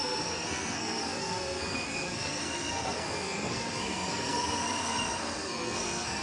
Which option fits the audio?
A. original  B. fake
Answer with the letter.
B